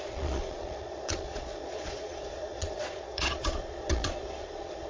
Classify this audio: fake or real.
fake